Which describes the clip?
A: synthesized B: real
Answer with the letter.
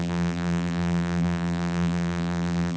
A